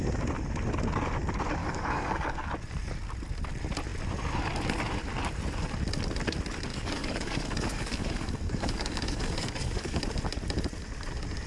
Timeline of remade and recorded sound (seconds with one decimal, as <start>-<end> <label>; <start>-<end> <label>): 0.0-1.6 recorded; 1.6-2.5 remade; 2.5-6.7 recorded; 6.7-10.0 remade; 10.0-11.5 recorded